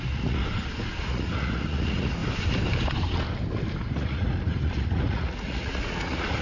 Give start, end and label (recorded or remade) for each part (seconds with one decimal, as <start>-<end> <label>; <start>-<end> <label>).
0.0-0.4 remade; 0.4-1.0 recorded; 1.0-2.2 remade; 2.2-3.9 recorded; 3.9-6.4 remade